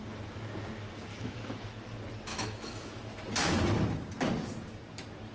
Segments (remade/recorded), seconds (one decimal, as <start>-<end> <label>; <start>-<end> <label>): 0.0-1.1 recorded; 1.1-1.7 remade; 1.7-2.3 recorded; 2.3-3.0 remade; 3.0-5.3 recorded